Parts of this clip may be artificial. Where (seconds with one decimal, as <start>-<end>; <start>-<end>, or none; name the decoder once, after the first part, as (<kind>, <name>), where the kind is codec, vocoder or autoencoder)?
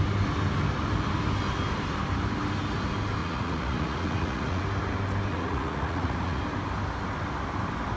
3.2-4.6 (vocoder, Vocos); 5.3-6.4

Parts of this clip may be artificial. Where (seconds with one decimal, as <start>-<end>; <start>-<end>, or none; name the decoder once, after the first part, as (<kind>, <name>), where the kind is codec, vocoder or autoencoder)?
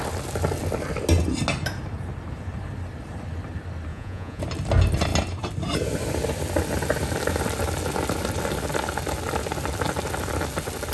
3.9-4.4 (vocoder, Vocos)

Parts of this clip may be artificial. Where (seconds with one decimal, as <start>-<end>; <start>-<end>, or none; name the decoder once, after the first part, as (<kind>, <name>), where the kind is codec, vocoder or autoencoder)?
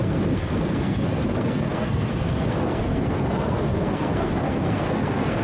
0.0-5.4 (codec, SNAC)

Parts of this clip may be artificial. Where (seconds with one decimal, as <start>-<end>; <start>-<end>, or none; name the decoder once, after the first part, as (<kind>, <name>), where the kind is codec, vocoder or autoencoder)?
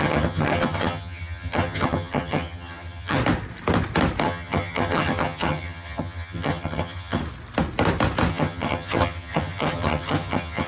0.0-3.2 (vocoder, HiFi-GAN); 4.2-7.2; 8.3-10.7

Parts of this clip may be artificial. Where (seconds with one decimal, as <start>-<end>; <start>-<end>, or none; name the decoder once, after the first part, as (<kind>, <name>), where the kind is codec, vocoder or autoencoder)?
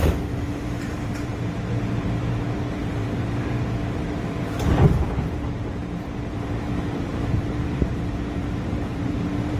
0.0-1.3 (vocoder, BigVGAN v2); 2.0-9.6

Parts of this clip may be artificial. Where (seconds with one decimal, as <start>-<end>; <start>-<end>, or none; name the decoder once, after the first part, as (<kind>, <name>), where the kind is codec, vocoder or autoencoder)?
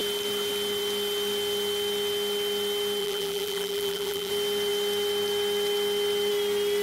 3.0-4.3 (vocoder, BigVGAN v2)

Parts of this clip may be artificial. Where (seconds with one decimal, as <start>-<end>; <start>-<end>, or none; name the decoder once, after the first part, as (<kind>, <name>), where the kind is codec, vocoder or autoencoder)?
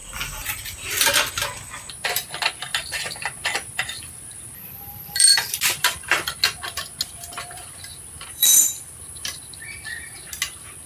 0.0-1.3 (vocoder, BigVGAN v2); 2.7-6.3; 8.3-9.4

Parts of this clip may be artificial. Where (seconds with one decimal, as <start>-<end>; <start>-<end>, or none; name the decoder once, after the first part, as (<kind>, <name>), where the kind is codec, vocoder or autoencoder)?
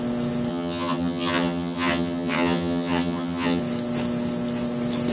0.5-3.6 (vocoder, HiFi-GAN)